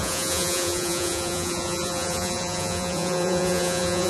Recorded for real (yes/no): no